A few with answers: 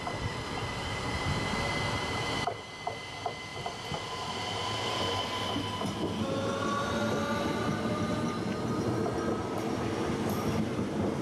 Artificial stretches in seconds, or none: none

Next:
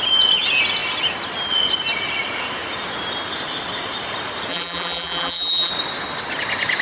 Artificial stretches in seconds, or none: 4.5-5.7 (vocoder, BigVGAN v2)

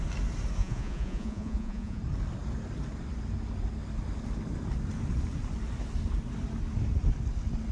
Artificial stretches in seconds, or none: 0.6-2.0 (vocoder, Vocos)

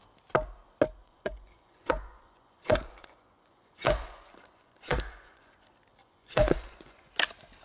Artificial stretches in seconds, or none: 1.0-5.6 (vocoder, Vocos); 6.0-7.1

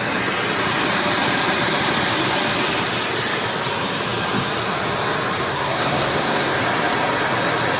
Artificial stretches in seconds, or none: 5.5-6.6 (codec, SNAC)

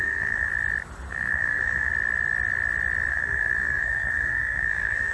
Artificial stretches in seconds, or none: 0.0-0.5 (codec, SNAC); 1.1-1.9; 3.1-5.1

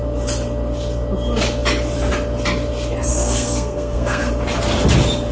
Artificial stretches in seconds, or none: 3.1-4.3 (codec, SNAC)